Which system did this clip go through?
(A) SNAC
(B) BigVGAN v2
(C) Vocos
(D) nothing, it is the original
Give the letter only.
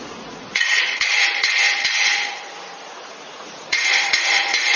C